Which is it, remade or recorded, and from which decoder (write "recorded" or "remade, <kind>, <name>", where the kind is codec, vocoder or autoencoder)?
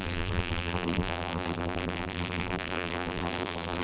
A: remade, vocoder, BigVGAN v2